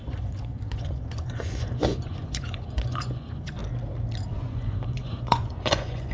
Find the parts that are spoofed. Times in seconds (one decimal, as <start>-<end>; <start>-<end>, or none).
0.0-3.6; 4.3-6.1

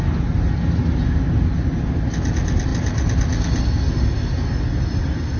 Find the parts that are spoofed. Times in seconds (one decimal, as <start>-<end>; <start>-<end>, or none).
none

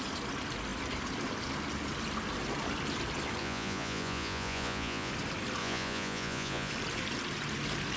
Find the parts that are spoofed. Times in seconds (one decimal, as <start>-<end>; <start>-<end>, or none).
3.4-5.1; 5.6-6.7

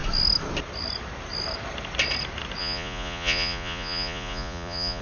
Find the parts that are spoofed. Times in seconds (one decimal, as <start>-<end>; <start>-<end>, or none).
2.6-5.0

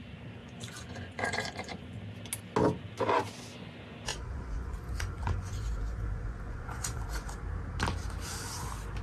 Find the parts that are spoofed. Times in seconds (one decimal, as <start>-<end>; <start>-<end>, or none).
0.4-2.0; 4.1-7.3

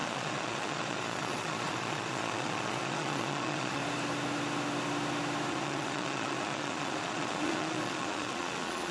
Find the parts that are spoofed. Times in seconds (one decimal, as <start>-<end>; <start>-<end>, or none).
0.0-3.8; 5.5-8.9